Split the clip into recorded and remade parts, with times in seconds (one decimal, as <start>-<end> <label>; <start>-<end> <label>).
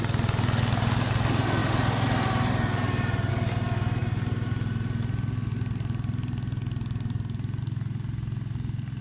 0.0-9.0 recorded